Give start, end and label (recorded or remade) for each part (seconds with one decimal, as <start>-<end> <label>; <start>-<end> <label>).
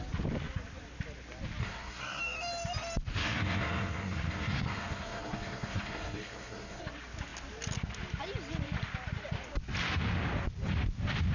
0.0-1.6 recorded; 1.6-2.2 remade; 2.2-3.1 recorded; 3.1-6.8 remade; 6.8-11.3 recorded